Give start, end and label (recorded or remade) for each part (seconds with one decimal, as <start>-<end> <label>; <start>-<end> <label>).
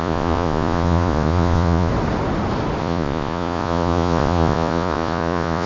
0.0-1.9 remade; 1.9-2.8 recorded; 2.8-5.7 remade